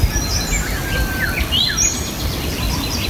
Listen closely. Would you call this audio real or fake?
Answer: real